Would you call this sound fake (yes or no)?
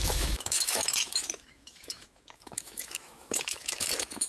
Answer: yes